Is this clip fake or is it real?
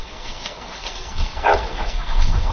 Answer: fake